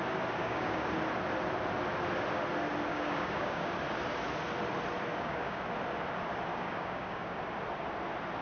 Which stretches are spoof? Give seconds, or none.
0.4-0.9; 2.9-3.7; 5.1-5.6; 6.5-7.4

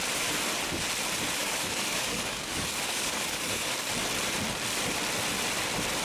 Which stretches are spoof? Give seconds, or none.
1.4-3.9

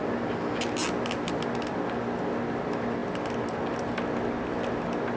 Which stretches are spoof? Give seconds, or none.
none

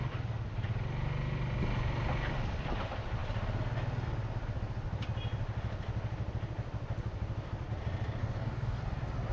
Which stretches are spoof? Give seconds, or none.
8.2-8.8